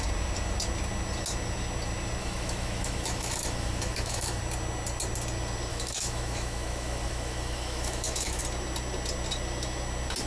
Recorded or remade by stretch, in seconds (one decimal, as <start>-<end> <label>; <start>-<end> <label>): 0.0-2.2 recorded; 2.2-4.4 remade; 4.4-5.7 recorded; 5.7-8.4 remade; 8.4-10.3 recorded